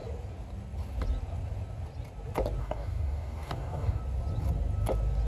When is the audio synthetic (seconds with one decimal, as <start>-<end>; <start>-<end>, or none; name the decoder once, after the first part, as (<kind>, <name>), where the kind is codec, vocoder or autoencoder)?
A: 2.6-4.0 (codec, DAC)